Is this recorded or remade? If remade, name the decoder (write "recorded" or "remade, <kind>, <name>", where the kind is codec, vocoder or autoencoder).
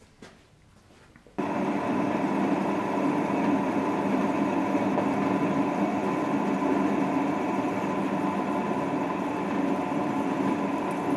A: recorded